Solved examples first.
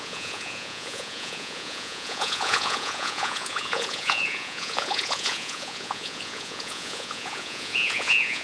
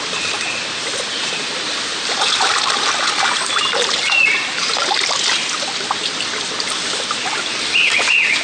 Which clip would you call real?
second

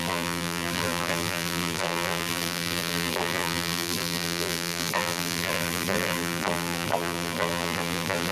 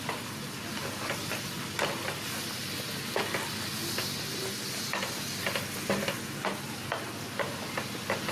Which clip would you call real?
second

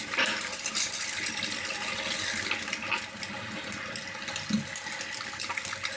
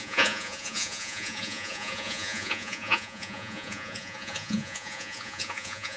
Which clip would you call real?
first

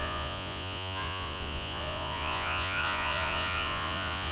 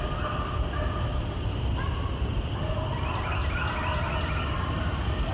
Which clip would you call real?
second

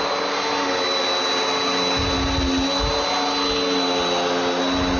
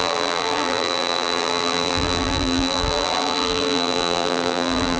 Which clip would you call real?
first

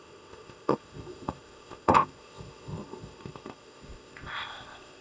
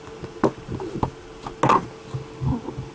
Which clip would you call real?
second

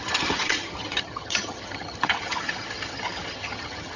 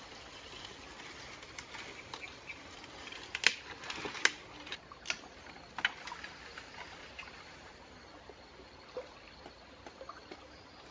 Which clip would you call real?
second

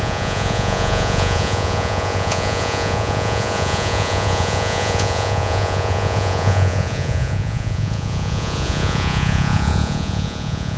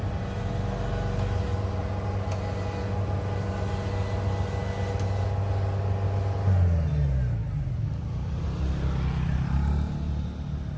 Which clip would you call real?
second